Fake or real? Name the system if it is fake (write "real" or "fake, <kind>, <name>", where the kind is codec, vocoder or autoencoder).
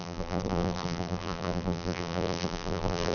fake, vocoder, BigVGAN v2